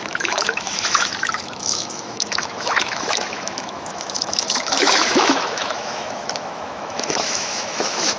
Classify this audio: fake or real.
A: fake